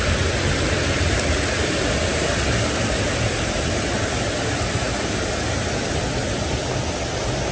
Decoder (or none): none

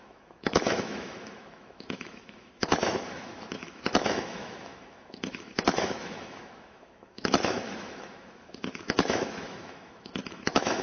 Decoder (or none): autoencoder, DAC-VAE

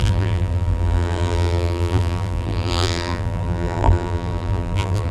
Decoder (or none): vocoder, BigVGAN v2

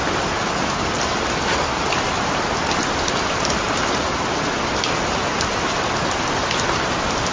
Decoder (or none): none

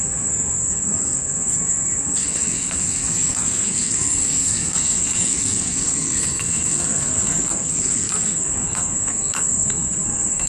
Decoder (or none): codec, SNAC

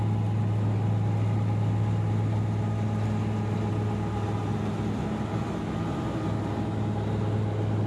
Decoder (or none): none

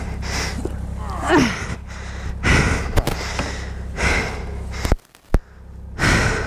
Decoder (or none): none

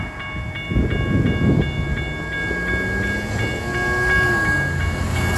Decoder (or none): none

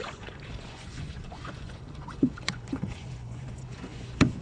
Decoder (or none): vocoder, Vocos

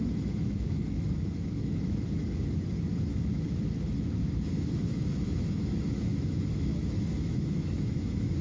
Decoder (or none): autoencoder, DAC-VAE